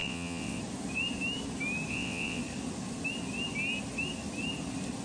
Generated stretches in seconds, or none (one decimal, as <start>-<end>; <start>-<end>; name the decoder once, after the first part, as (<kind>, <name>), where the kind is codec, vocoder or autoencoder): 0.0-0.6 (vocoder, WaveNeXt); 1.9-2.4